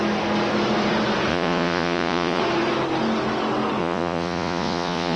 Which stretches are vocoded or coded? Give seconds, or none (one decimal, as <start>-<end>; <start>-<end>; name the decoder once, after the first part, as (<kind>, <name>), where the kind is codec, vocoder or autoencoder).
1.3-2.4 (vocoder, Vocos); 3.8-5.2